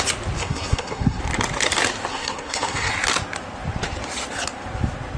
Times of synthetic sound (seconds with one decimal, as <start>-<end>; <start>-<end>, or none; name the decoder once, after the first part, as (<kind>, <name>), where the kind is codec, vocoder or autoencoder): 0.4-1.2 (codec, SNAC); 2.1-2.9